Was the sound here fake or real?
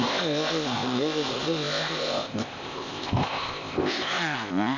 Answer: fake